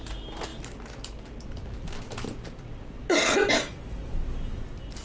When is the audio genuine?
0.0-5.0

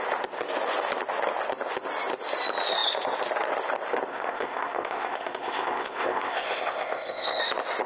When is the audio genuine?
0.0-4.1; 7.4-7.9

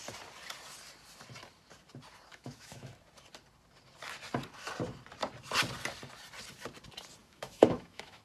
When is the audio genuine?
0.0-2.3; 2.9-7.2

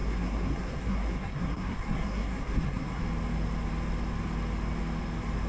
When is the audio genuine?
3.0-5.5

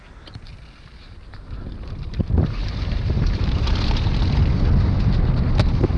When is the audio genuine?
0.0-0.8; 1.7-2.6; 3.8-6.0